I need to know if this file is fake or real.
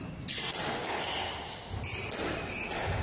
real